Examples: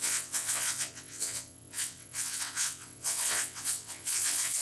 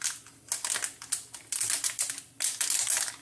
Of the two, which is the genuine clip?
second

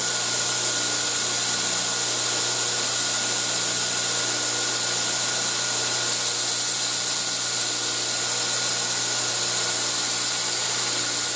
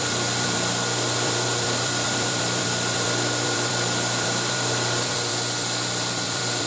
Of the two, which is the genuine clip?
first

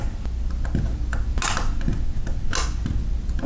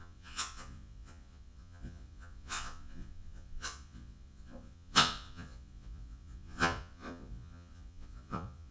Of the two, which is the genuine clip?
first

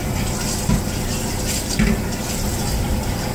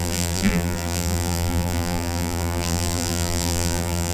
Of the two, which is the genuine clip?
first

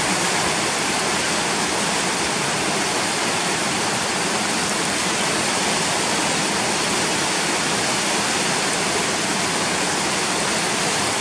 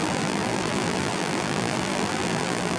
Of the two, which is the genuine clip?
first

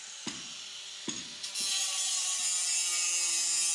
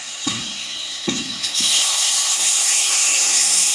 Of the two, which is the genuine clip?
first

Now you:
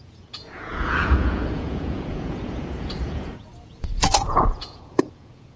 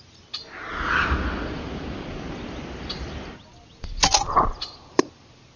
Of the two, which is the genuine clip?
second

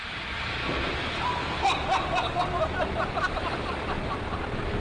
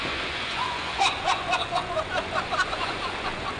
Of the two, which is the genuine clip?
first